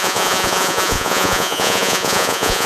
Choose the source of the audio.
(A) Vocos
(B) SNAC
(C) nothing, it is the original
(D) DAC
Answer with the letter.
A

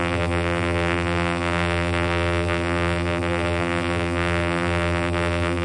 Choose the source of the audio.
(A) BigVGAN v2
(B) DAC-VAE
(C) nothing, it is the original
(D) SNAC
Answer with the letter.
A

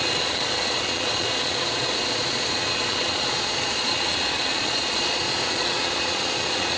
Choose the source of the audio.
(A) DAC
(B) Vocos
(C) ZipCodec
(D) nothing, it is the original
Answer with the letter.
B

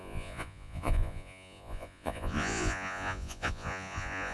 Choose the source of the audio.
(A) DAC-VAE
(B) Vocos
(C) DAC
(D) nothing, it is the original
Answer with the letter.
B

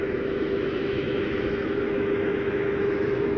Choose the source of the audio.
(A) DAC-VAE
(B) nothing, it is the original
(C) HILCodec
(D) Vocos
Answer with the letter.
A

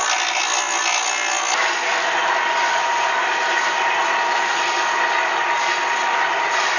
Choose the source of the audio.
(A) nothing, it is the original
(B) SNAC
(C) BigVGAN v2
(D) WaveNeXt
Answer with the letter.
A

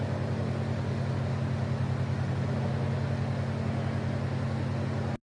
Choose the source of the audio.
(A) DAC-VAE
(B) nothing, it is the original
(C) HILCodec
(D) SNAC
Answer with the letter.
B